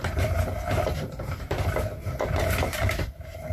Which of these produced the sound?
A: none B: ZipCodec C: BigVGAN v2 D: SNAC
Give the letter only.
C